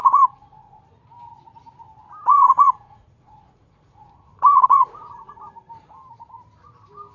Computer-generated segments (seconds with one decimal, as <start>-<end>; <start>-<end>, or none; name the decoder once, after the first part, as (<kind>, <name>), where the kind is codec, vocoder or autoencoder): 0.0-0.8 (vocoder, Vocos); 2.3-5.5